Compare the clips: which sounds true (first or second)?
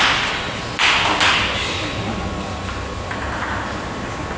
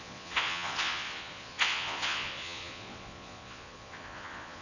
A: first